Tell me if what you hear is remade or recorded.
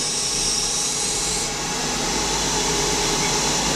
remade